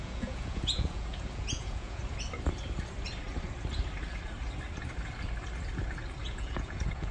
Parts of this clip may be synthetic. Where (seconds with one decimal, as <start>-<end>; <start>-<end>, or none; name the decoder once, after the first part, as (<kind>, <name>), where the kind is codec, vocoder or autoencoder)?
0.0-2.0 (vocoder, Vocos); 6.2-7.1

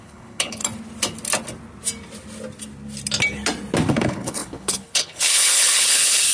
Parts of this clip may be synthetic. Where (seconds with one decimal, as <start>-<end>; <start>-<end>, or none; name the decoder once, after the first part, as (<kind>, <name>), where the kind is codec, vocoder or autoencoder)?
0.0-0.6 (codec, HILCodec); 3.9-6.3

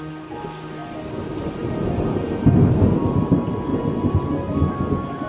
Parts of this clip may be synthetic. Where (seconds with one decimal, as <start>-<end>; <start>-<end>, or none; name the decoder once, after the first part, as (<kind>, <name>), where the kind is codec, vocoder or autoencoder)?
none

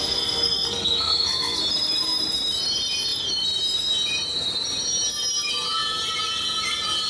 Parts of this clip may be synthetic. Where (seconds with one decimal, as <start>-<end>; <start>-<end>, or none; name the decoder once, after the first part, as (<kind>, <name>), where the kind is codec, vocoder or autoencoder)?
0.0-1.6 (codec, SNAC)

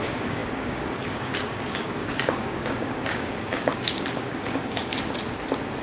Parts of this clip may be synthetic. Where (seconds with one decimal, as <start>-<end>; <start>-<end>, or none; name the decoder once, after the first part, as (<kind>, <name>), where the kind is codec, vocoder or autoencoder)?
0.0-4.9 (codec, DAC)

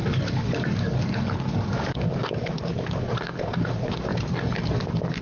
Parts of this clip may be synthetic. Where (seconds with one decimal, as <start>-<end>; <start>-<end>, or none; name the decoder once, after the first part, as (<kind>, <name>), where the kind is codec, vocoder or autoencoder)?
0.0-4.1 (codec, DAC); 4.8-5.2